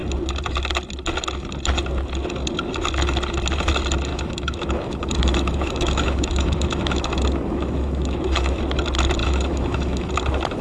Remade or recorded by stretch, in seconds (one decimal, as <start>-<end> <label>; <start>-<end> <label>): 0.0-4.1 recorded; 4.1-8.6 remade; 8.6-9.2 recorded; 9.2-10.1 remade; 10.1-10.6 recorded